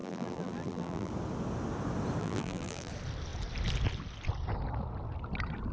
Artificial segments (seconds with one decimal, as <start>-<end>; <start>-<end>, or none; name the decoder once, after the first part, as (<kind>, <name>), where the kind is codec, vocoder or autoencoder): 0.0-1.1 (vocoder, BigVGAN v2); 2.2-2.9